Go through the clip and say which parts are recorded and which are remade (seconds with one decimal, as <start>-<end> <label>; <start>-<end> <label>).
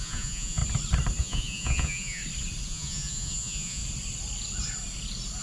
0.0-0.6 remade; 0.6-1.2 recorded; 1.2-2.2 remade; 2.2-2.7 recorded; 2.7-3.8 remade; 3.8-5.4 recorded